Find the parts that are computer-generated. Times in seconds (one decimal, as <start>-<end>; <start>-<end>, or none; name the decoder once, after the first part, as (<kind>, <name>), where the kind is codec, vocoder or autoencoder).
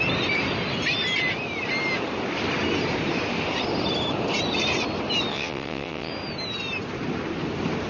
5.3-6.1 (vocoder, WaveNeXt)